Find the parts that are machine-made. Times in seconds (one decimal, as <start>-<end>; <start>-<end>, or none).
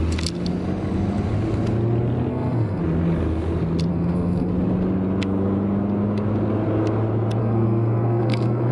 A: 2.3-2.8; 3.9-4.5; 7.4-8.7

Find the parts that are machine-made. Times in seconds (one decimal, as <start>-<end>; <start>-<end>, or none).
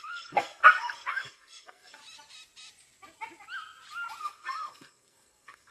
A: 0.0-2.0; 4.2-5.7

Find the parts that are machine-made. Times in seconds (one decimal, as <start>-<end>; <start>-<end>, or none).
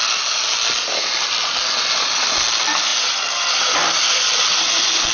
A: none